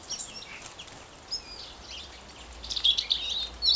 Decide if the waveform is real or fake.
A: real